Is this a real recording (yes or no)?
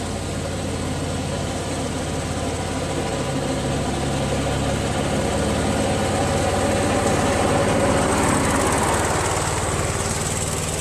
yes